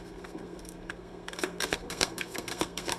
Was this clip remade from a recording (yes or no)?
yes